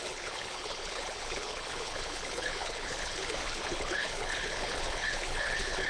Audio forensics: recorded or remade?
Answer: remade